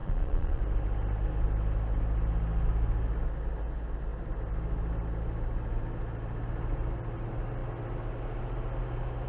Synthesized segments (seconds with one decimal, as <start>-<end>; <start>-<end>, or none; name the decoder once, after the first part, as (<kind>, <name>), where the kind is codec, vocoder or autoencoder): 0.0-0.6 (vocoder, Vocos)